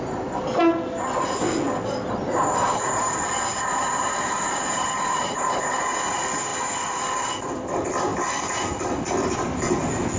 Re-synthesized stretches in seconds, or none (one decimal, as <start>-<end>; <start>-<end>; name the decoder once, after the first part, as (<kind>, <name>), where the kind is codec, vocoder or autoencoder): 2.2-3.3 (vocoder, BigVGAN v2); 3.7-5.7